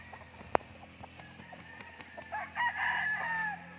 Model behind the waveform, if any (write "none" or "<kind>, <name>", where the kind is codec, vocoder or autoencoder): none